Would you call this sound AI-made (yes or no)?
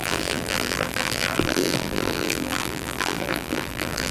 yes